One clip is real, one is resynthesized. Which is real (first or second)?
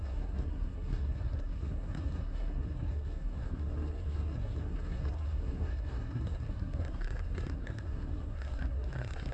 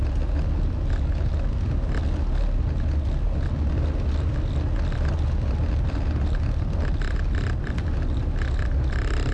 second